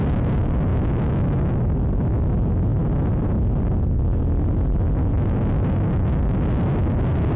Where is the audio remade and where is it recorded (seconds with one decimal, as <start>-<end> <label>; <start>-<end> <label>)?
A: 0.0-0.7 recorded; 0.7-1.5 remade; 1.5-7.4 recorded